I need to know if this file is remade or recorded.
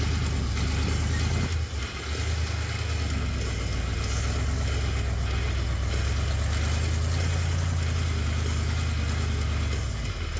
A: recorded